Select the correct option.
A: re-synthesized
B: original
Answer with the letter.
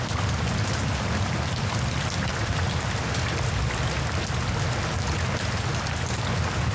B